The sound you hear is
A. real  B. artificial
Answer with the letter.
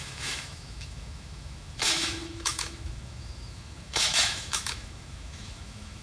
B